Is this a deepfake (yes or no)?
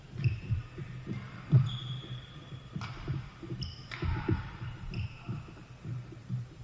no